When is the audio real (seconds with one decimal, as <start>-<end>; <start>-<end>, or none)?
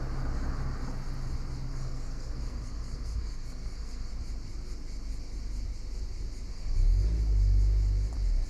0.0-1.7; 4.1-6.5; 7.2-8.5